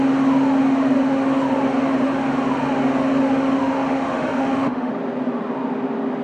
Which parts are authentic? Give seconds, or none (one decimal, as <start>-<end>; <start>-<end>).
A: 0.0-3.6; 4.9-6.2